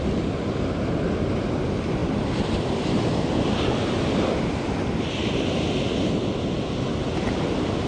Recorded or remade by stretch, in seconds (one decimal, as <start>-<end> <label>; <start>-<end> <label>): 0.0-2.0 recorded; 2.0-6.1 remade; 6.1-7.9 recorded